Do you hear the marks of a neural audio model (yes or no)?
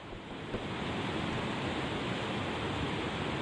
no